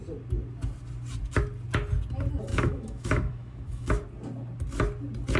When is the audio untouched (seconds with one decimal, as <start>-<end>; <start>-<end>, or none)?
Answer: 0.0-2.5; 3.9-5.4